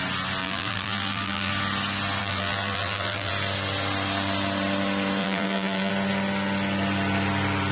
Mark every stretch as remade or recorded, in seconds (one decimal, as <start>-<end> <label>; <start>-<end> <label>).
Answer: 0.0-0.4 recorded; 0.4-1.5 remade; 1.5-2.2 recorded; 2.2-3.3 remade; 3.3-5.2 recorded; 5.2-5.9 remade; 5.9-7.7 recorded